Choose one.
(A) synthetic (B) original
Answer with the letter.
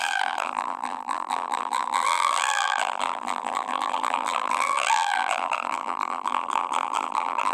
A